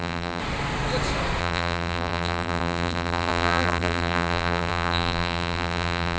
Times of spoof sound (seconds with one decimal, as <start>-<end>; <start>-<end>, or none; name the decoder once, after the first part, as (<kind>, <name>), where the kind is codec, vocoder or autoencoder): 0.0-0.4 (vocoder, BigVGAN v2); 1.4-6.2